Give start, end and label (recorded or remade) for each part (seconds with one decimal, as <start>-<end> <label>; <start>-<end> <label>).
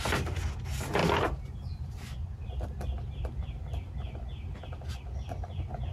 0.0-1.0 recorded; 1.0-3.5 remade; 3.5-5.9 recorded